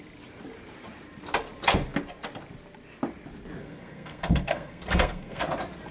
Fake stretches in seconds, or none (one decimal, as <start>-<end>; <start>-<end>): 3.6-5.4